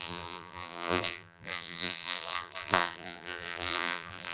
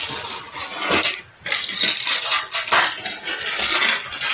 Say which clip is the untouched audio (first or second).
second